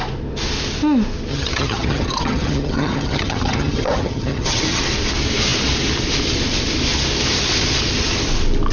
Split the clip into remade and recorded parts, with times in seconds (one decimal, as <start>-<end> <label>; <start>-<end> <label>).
0.0-1.3 recorded; 1.3-4.8 remade; 4.8-8.7 recorded